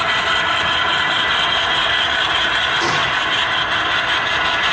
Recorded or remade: recorded